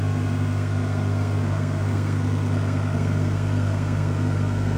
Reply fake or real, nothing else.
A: fake